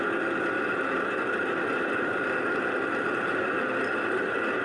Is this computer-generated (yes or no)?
no